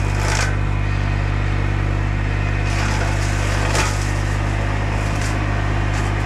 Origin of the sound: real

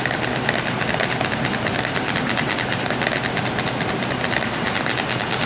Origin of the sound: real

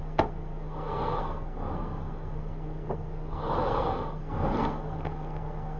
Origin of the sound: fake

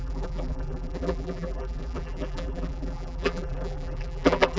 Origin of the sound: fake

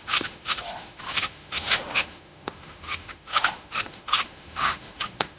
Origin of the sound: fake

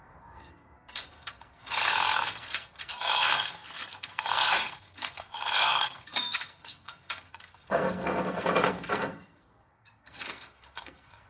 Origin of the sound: fake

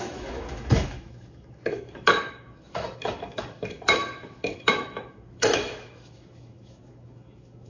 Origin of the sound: fake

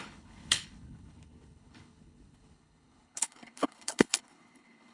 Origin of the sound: fake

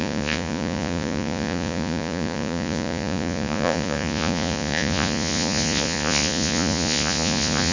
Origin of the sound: fake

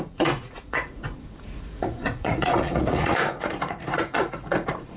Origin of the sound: fake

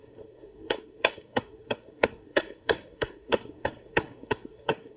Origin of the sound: fake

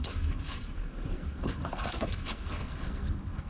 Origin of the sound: fake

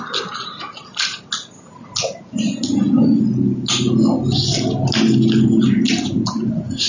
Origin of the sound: real